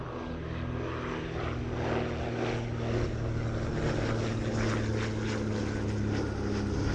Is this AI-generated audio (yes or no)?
no